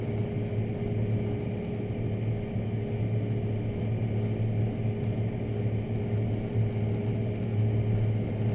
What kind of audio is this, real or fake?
real